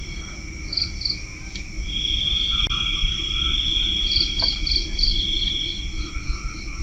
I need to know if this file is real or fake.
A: fake